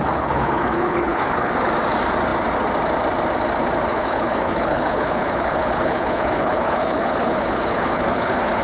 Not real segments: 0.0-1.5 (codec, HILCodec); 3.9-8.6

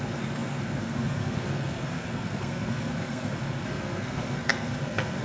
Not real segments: 0.0-5.2 (codec, SNAC)